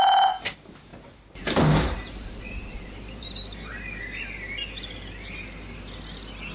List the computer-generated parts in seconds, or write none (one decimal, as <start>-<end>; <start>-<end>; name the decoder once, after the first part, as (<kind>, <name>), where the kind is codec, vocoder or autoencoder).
0.9-4.0 (vocoder, BigVGAN v2)